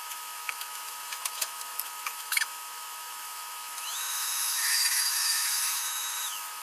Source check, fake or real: fake